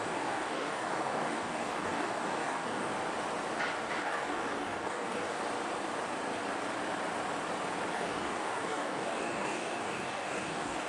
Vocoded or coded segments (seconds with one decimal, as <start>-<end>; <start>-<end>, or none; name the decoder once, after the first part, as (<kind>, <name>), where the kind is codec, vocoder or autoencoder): 0.0-2.9 (codec, DAC); 4.0-5.4; 7.9-10.9